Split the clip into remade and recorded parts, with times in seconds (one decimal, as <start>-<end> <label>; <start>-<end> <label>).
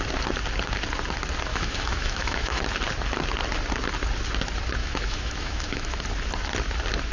0.0-1.5 recorded; 1.5-2.6 remade; 2.6-4.8 recorded; 4.8-6.0 remade; 6.0-7.1 recorded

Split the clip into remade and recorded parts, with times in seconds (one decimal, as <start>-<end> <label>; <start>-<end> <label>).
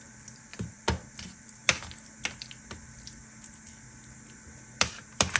0.0-1.6 remade; 1.6-4.8 recorded; 4.8-5.4 remade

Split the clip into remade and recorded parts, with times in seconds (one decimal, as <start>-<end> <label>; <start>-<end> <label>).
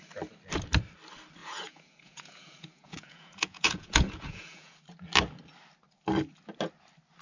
0.0-1.4 recorded; 1.4-4.8 remade; 4.8-7.2 recorded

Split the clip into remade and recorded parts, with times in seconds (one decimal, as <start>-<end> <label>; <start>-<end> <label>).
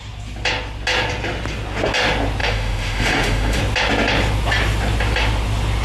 0.0-2.4 recorded; 2.4-3.6 remade; 3.6-5.8 recorded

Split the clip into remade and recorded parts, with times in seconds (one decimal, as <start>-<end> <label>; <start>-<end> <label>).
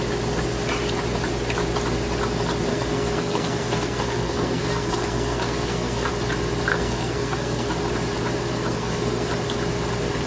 0.0-2.7 recorded; 2.7-6.1 remade; 6.1-6.7 recorded; 6.7-7.8 remade; 7.8-8.5 recorded; 8.5-9.3 remade; 9.3-10.3 recorded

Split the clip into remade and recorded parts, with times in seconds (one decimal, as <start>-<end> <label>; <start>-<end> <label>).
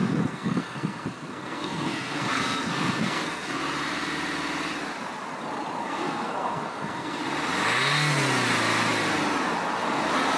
0.0-3.6 remade; 3.6-5.8 recorded; 5.8-7.2 remade; 7.2-10.4 recorded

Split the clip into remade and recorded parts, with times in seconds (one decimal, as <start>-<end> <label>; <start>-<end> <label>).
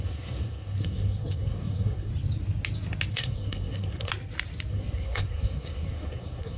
0.0-2.1 remade; 2.1-3.1 recorded; 3.1-4.1 remade; 4.1-4.7 recorded; 4.7-6.6 remade